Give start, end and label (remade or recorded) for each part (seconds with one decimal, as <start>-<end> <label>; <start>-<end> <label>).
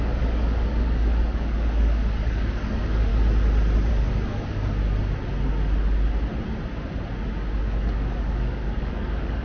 0.0-3.1 remade; 3.1-3.9 recorded; 3.9-4.8 remade; 4.8-7.6 recorded; 7.6-9.4 remade